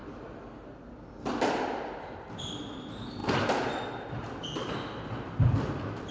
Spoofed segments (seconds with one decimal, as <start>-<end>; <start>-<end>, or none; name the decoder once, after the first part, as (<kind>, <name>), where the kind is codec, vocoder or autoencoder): none